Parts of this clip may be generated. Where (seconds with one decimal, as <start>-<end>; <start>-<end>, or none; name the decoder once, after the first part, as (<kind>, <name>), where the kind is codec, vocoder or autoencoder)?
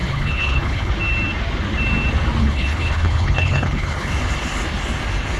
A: 0.0-0.9 (codec, HILCodec); 2.4-4.1